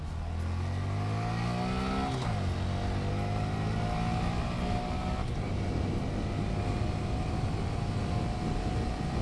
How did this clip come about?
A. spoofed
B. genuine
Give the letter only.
B